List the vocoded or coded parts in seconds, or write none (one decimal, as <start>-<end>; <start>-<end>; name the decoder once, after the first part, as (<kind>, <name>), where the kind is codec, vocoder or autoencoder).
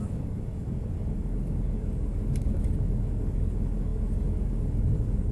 0.0-5.3 (codec, DAC)